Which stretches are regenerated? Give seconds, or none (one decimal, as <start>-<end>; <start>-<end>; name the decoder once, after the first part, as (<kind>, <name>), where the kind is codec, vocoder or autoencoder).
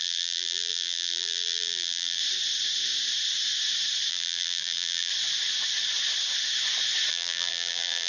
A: 0.0-2.2 (vocoder, BigVGAN v2); 4.1-5.1; 7.1-8.1